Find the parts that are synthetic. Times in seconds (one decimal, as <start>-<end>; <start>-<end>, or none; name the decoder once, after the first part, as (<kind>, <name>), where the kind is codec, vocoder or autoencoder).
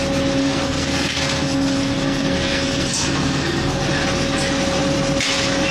0.4-3.8 (codec, SNAC)